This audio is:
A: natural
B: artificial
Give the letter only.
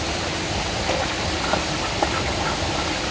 A